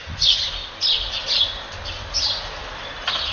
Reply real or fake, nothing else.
real